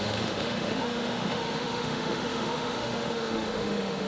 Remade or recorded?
remade